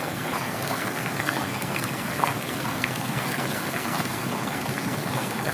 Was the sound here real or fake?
fake